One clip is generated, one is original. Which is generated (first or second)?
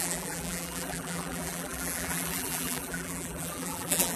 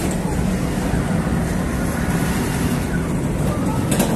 first